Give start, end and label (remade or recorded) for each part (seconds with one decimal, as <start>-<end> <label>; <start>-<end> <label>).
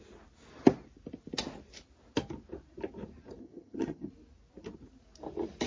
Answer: 0.0-3.4 recorded; 3.4-4.1 remade; 4.1-5.7 recorded